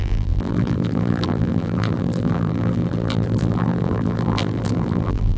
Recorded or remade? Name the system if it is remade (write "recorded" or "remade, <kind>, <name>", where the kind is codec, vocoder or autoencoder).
remade, vocoder, BigVGAN v2